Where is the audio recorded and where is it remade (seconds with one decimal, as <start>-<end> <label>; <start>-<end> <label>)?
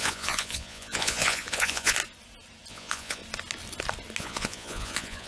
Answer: 0.0-2.0 remade; 2.0-2.7 recorded; 2.7-3.2 remade; 3.2-4.2 recorded; 4.2-5.3 remade